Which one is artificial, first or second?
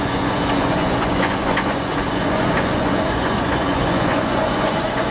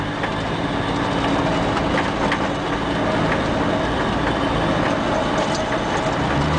first